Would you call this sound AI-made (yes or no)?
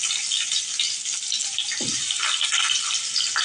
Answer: no